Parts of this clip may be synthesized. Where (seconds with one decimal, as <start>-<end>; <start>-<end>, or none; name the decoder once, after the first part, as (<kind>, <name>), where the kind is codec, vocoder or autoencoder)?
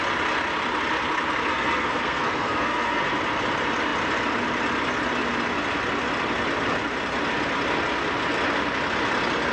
1.5-3.2 (codec, SNAC)